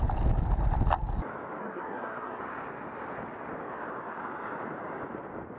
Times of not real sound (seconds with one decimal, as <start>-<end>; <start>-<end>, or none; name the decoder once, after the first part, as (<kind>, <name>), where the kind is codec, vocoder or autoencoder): 1.6-2.4 (codec, SNAC)